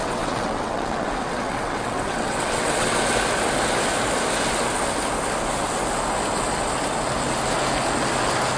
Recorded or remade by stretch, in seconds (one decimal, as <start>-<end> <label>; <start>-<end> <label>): 0.0-3.0 remade; 3.0-8.6 recorded